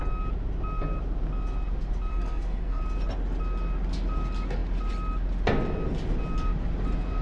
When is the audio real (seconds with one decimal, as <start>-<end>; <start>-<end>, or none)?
0.0-2.1; 2.8-7.2